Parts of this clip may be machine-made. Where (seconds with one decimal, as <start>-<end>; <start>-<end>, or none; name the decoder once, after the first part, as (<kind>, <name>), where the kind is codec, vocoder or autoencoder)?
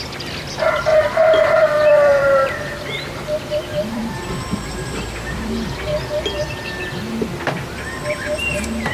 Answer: 0.0-5.9 (vocoder, BigVGAN v2); 8.0-8.9